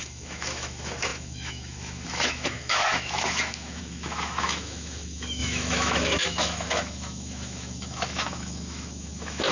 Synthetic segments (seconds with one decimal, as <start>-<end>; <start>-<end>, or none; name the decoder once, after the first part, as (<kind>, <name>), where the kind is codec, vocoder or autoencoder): 0.0-9.5 (autoencoder, DAC-VAE)